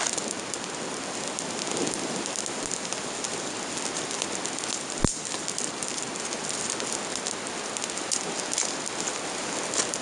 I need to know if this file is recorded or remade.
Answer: recorded